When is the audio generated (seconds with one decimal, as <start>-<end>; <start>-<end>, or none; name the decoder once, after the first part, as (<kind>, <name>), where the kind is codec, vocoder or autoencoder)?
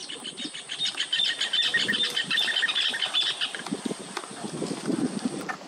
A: none